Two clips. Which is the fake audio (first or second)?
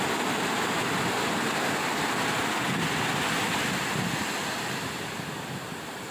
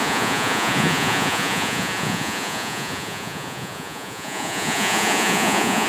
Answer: second